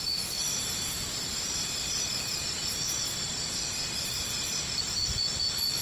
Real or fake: real